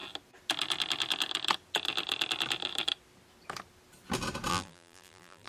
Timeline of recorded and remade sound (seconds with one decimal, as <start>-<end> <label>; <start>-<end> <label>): 0.0-4.5 recorded; 4.5-5.5 remade